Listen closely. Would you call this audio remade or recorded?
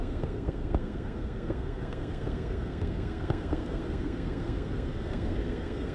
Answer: remade